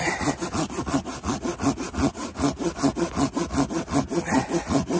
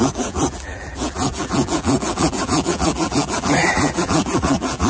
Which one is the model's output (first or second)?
second